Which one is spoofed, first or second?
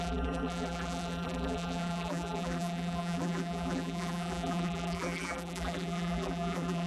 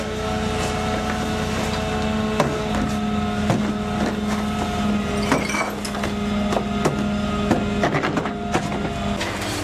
first